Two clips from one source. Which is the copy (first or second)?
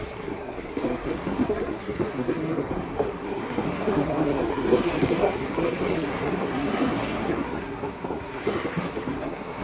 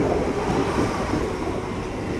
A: first